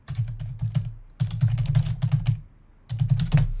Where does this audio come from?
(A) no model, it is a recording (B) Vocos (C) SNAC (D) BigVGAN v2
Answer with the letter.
A